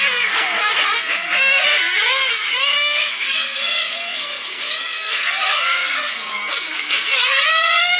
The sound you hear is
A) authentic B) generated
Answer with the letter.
B